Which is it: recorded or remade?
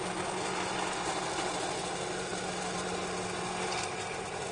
recorded